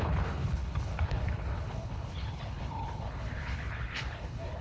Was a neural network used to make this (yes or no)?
yes